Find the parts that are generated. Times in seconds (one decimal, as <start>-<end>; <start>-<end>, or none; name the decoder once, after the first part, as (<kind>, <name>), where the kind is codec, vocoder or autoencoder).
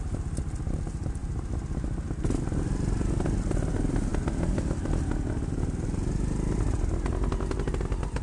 none